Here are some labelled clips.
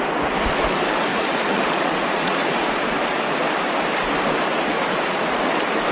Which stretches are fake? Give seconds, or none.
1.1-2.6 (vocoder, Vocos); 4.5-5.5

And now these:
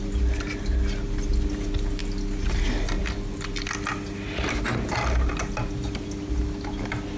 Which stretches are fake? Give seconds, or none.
none

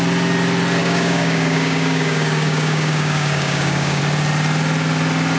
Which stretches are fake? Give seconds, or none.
0.8-4.0 (codec, DAC)

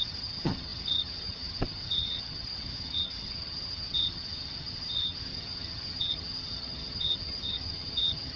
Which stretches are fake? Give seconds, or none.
0.0-8.4 (vocoder, HiFi-GAN)

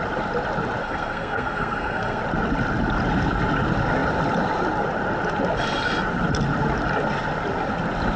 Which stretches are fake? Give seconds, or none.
0.8-2.2 (codec, SNAC)

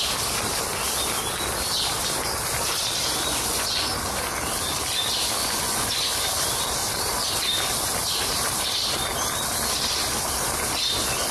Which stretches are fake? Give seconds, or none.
3.3-3.9 (vocoder, Vocos); 5.4-6.1

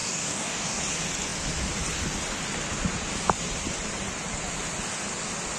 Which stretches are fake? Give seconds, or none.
0.0-0.8 (codec, DAC)